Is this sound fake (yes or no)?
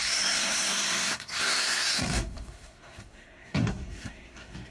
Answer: yes